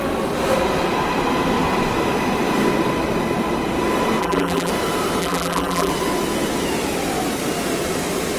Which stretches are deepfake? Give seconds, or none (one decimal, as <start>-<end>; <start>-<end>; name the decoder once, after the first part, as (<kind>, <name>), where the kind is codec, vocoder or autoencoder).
4.2-4.7 (vocoder, BigVGAN v2); 5.2-5.9